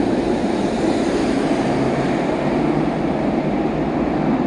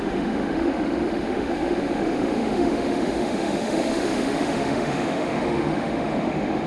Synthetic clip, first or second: second